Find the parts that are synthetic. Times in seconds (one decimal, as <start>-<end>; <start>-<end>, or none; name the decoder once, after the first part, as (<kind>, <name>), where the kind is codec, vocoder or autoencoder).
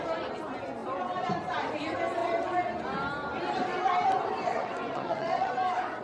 4.5-5.5 (vocoder, WaveNeXt)